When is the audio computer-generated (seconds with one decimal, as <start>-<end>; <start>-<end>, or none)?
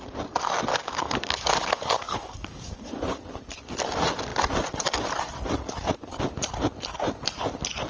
0.7-2.9